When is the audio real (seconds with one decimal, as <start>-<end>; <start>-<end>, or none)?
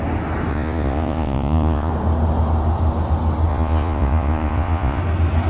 0.0-0.5; 1.9-3.5; 5.0-5.5